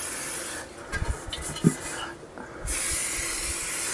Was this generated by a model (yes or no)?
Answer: no